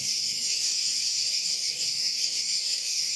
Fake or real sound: fake